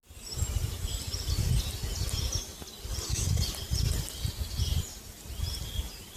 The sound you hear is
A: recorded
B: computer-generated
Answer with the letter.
A